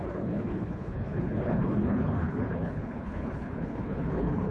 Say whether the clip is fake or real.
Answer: fake